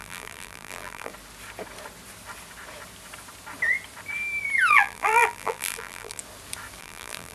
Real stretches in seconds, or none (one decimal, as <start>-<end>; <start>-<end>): 1.1-4.7; 6.2-6.8

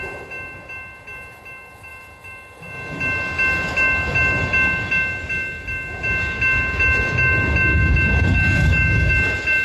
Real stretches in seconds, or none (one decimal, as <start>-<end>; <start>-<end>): 0.0-7.8; 9.1-9.6

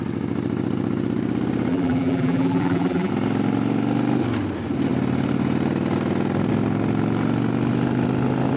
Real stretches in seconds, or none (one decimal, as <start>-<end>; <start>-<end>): 0.0-1.7; 3.1-8.6

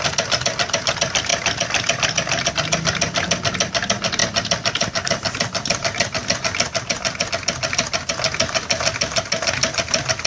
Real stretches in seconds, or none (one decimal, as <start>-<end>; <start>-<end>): 0.0-10.3